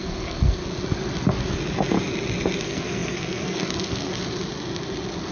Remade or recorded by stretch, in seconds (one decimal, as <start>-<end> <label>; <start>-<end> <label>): 0.0-0.6 remade; 0.6-2.6 recorded; 2.6-4.1 remade; 4.1-5.3 recorded